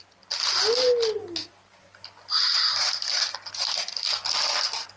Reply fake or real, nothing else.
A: real